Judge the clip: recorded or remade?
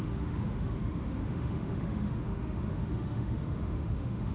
remade